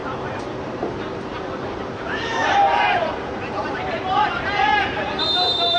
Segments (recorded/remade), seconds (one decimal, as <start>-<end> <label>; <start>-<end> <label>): 0.0-0.6 recorded; 0.6-5.8 remade